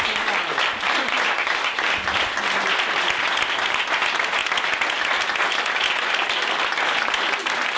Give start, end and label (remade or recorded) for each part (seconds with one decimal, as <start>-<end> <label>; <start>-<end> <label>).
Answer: 0.0-7.8 recorded